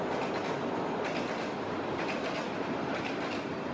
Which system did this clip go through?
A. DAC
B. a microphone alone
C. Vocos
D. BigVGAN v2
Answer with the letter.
B